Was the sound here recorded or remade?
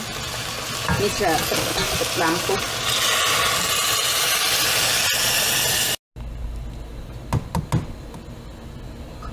recorded